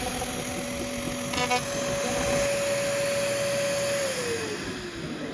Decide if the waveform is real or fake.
real